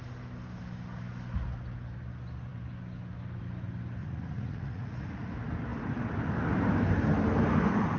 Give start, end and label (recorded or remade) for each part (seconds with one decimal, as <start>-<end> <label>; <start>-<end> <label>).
0.0-4.0 recorded; 4.0-5.3 remade; 5.3-8.0 recorded